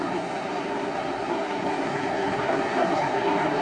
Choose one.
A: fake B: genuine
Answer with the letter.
A